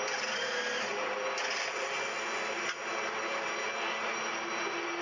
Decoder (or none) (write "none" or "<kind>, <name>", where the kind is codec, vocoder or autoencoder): none